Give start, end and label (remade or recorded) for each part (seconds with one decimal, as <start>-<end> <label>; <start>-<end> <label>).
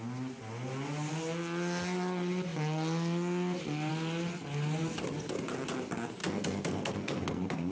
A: 0.0-6.2 recorded; 6.2-7.7 remade